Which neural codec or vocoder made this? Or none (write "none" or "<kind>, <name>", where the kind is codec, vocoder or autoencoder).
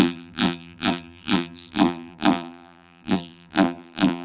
vocoder, BigVGAN v2